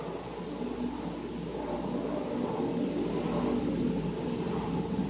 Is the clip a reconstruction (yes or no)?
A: no